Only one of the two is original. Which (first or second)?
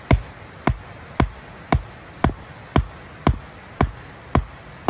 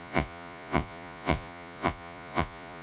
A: first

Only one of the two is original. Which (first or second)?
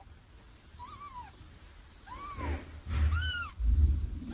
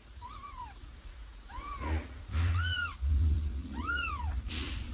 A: first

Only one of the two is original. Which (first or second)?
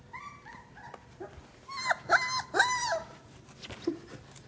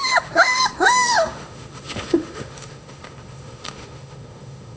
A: first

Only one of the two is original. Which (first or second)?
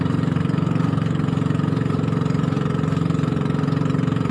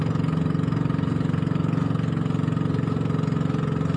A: second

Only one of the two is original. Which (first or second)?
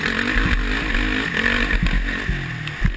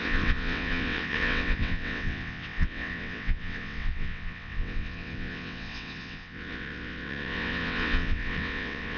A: first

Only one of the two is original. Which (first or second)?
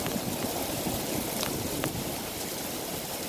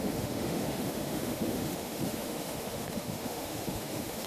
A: first